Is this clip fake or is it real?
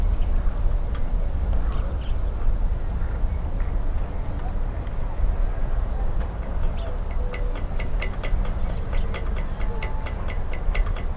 real